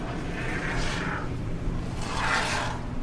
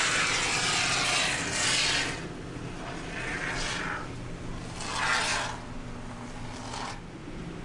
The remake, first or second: first